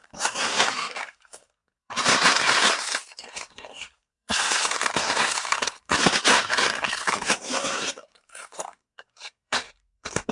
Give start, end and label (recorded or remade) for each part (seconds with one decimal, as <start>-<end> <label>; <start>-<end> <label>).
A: 0.0-10.3 remade